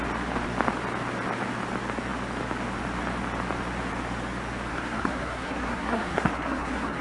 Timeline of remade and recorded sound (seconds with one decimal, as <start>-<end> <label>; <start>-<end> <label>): 0.0-4.7 recorded; 4.7-7.0 remade